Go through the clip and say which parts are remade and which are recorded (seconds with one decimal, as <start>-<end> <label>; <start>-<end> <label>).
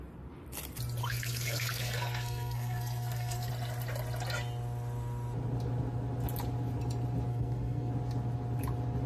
0.0-1.0 recorded; 1.0-3.5 remade; 3.5-7.3 recorded; 7.3-7.9 remade; 7.9-9.1 recorded